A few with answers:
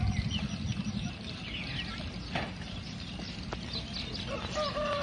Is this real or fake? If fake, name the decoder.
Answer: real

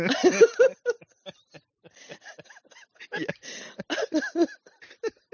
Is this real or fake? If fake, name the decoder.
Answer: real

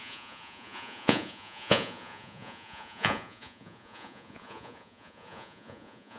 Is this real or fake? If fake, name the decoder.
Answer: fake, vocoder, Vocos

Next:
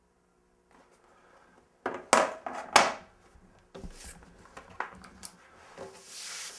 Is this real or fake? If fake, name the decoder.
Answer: real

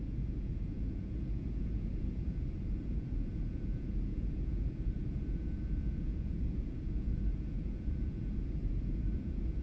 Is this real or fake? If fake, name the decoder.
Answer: fake, vocoder, Vocos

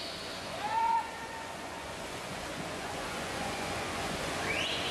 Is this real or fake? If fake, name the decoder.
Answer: fake, vocoder, Vocos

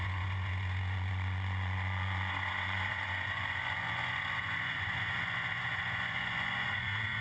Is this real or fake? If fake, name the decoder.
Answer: fake, vocoder, Vocos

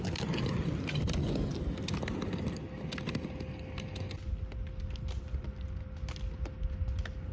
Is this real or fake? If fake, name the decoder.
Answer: real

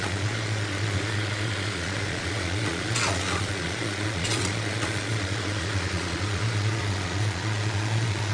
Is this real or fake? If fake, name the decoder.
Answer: fake, vocoder, Vocos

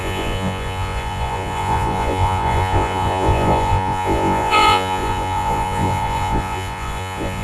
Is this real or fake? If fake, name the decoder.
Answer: fake, vocoder, Vocos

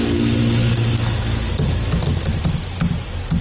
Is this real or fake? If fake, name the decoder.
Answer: real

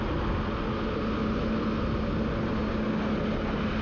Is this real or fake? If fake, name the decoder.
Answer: real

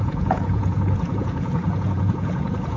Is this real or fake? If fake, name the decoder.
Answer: fake, vocoder, Vocos